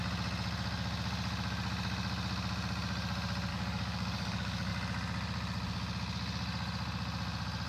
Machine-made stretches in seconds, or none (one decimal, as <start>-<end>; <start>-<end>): 3.5-4.7